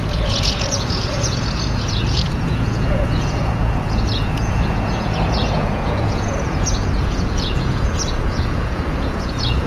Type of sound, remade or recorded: remade